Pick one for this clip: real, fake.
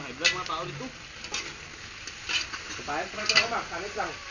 real